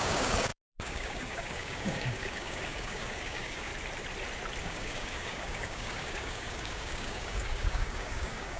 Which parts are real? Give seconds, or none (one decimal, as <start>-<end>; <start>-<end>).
3.7-4.6